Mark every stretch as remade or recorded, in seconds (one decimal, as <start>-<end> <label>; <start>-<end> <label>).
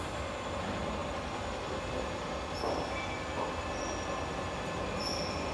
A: 0.0-5.5 recorded